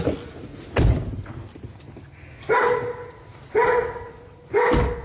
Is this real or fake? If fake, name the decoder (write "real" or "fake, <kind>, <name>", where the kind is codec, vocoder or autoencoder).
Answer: real